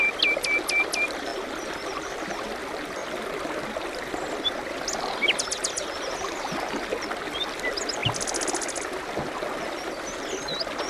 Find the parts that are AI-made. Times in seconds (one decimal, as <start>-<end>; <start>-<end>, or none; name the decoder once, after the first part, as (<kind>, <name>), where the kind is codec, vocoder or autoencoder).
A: none